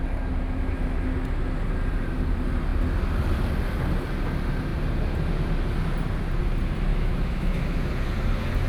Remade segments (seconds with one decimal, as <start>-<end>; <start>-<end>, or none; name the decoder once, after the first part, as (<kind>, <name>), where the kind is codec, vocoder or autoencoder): 6.9-7.9 (autoencoder, DAC-VAE)